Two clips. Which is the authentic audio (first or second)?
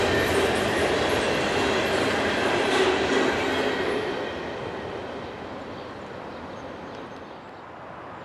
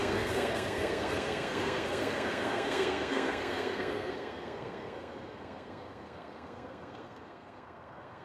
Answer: first